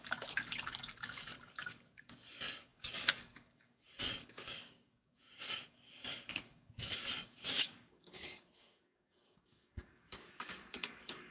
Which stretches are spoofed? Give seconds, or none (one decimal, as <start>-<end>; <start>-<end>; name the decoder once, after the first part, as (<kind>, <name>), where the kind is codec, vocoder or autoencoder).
0.0-11.3 (codec, DAC)